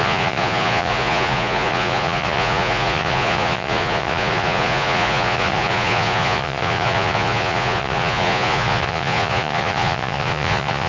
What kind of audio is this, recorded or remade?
remade